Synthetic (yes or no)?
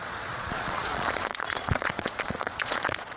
yes